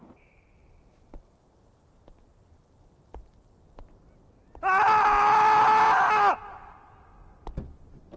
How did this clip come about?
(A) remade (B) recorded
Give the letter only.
B